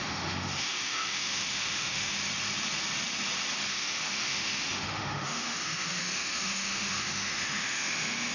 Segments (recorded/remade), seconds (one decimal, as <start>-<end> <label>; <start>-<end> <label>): 0.0-2.2 remade; 2.2-3.7 recorded; 3.7-8.3 remade